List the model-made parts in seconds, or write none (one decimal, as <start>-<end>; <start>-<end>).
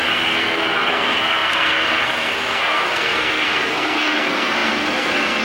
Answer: 0.0-5.4